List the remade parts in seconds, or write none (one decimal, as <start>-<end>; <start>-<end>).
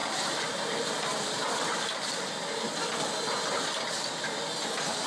0.0-3.1